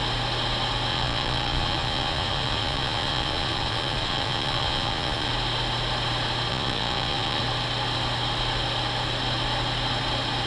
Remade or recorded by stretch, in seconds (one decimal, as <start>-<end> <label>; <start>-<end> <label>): 0.0-0.9 recorded; 0.9-5.3 remade; 5.3-6.5 recorded; 6.5-7.4 remade; 7.4-10.5 recorded